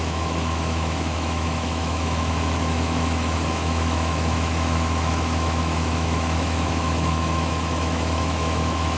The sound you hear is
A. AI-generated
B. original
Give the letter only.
A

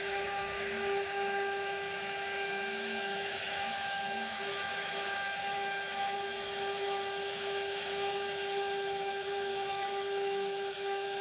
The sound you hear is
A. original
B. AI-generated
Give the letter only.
B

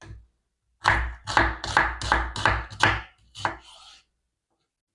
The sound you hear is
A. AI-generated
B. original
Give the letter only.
B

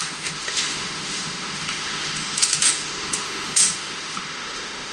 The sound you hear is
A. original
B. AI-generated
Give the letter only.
B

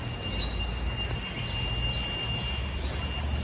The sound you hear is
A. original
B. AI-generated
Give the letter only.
A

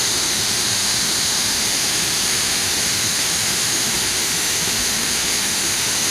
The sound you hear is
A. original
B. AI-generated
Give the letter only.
B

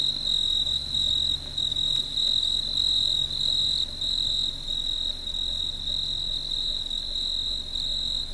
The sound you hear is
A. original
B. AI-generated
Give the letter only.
A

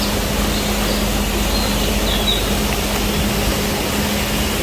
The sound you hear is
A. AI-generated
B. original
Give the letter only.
B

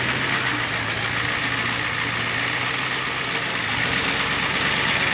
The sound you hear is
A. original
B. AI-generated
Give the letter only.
A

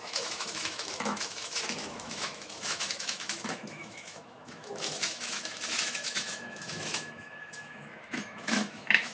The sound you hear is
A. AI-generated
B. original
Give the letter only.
A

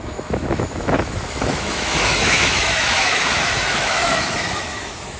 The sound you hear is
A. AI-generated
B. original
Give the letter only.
A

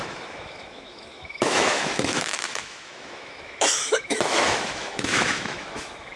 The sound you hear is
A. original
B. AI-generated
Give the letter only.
B